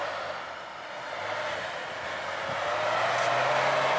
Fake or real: real